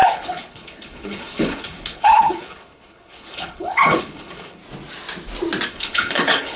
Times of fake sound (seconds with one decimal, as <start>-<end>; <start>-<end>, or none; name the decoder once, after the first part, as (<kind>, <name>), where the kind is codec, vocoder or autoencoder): 0.0-4.6 (codec, HILCodec); 5.7-6.6